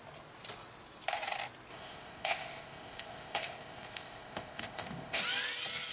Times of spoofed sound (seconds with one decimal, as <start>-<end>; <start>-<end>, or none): 1.7-5.2